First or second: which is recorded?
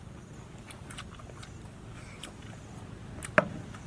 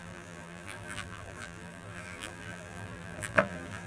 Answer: first